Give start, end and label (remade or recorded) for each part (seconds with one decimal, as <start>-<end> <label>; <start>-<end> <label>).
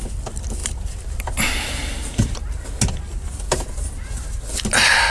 0.0-5.1 recorded